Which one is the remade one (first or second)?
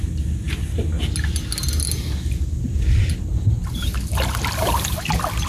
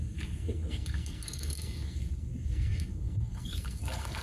second